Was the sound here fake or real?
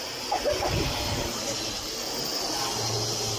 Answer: real